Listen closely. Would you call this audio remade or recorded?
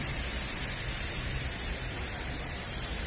remade